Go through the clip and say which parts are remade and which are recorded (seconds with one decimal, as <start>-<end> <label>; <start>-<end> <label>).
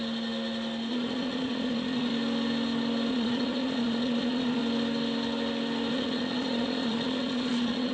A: 0.0-0.9 recorded; 0.9-2.1 remade; 2.1-3.1 recorded; 3.1-4.6 remade; 4.6-5.9 recorded; 5.9-7.9 remade